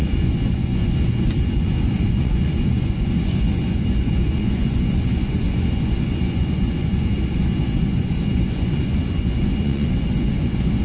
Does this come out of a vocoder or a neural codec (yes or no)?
yes